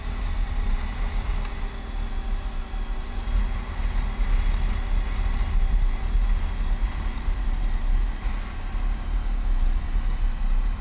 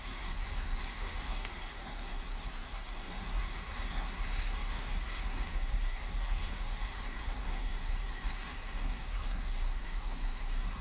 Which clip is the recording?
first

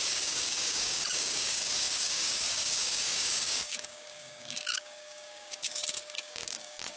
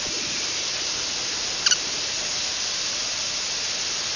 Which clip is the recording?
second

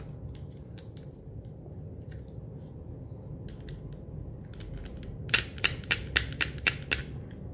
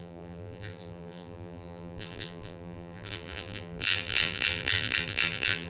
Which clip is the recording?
first